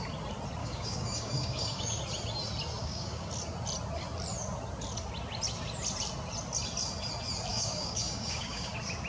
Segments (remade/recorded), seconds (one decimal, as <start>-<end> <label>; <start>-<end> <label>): 0.0-0.6 recorded; 0.6-2.0 remade; 2.0-2.8 recorded; 2.8-3.3 remade; 3.3-7.5 recorded; 7.5-8.7 remade; 8.7-9.1 recorded